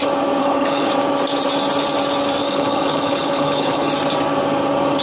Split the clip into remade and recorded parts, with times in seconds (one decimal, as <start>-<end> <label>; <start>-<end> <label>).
0.0-0.4 recorded; 0.4-0.9 remade; 0.9-2.4 recorded; 2.4-3.9 remade; 3.9-5.0 recorded